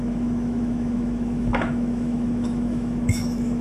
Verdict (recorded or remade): remade